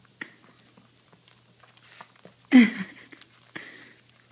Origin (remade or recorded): recorded